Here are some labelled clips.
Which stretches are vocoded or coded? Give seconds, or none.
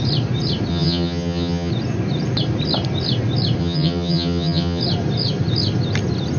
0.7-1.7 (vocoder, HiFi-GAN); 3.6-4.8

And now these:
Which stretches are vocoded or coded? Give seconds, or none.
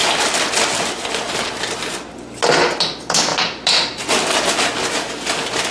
none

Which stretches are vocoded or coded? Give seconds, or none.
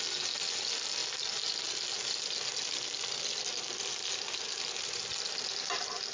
none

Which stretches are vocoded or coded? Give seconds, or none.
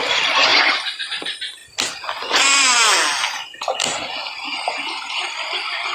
none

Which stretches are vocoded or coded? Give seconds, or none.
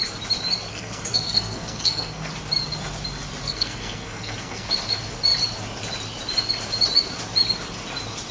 0.7-2.3 (codec, SNAC); 3.4-4.7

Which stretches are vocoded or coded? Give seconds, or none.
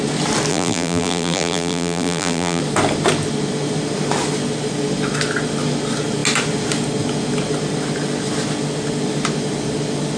0.5-2.6 (vocoder, BigVGAN v2)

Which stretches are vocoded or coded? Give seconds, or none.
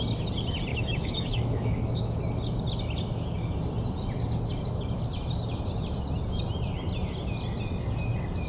0.7-2.2 (autoencoder, DAC-VAE)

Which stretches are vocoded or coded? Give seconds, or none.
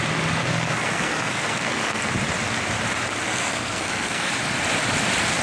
0.4-2.1 (codec, SNAC); 3.3-4.3